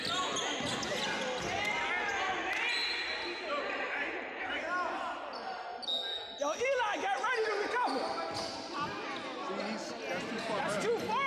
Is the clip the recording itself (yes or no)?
yes